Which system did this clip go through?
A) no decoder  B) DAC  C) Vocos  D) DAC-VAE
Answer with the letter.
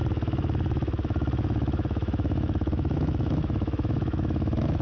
D